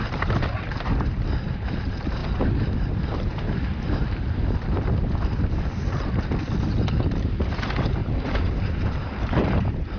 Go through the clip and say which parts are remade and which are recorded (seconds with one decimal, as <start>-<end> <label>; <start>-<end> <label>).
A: 0.0-3.3 remade; 3.3-4.0 recorded; 4.0-8.0 remade; 8.0-8.6 recorded; 8.6-10.0 remade